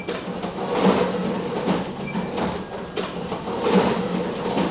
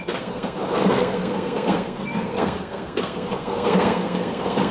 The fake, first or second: second